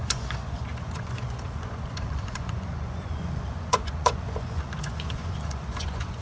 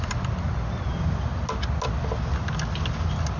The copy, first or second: first